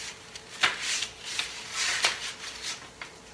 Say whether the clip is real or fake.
real